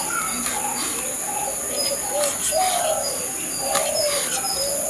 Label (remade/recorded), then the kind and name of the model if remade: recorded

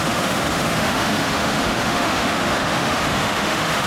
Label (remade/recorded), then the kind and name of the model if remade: remade, autoencoder, DAC-VAE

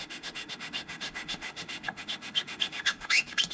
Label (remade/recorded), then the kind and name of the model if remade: remade, autoencoder, DAC-VAE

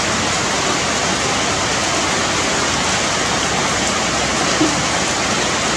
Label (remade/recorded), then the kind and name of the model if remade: recorded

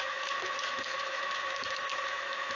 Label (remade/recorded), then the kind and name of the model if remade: remade, autoencoder, DAC-VAE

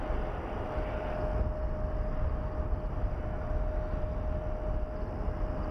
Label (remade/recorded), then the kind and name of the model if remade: recorded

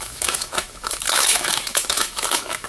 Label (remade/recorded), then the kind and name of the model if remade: remade, autoencoder, DAC-VAE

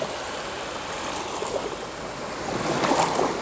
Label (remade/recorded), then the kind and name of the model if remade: recorded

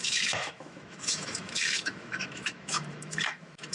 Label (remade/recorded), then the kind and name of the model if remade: remade, autoencoder, DAC-VAE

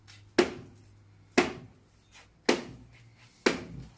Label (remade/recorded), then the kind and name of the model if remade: recorded